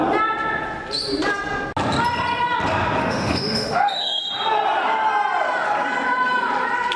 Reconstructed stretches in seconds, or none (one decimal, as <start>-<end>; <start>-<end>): 3.0-4.2